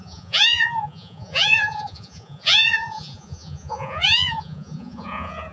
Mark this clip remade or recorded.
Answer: remade